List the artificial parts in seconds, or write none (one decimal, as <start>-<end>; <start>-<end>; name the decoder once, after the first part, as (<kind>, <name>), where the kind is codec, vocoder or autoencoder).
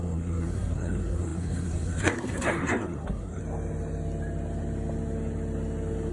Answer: 0.0-3.4 (codec, SNAC)